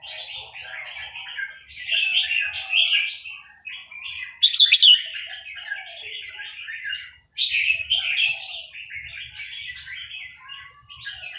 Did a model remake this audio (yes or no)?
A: no